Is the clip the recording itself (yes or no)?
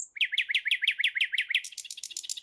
yes